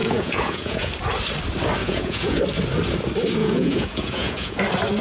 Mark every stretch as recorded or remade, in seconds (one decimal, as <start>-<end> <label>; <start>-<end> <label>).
0.0-0.9 remade; 0.9-1.8 recorded; 1.8-2.4 remade; 2.4-3.4 recorded; 3.4-4.6 remade; 4.6-5.0 recorded